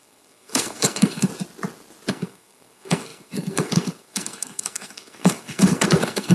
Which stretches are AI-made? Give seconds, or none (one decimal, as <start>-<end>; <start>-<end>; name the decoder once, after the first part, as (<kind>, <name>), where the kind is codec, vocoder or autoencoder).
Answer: 0.0-1.3 (codec, SNAC); 2.1-6.3